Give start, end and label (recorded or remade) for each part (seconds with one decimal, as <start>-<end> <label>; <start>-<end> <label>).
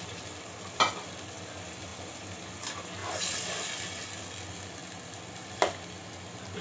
0.0-6.6 recorded